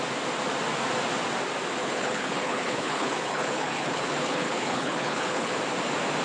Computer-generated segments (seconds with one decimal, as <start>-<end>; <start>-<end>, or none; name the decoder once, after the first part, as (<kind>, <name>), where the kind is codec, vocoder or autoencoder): 1.8-5.5 (codec, HILCodec)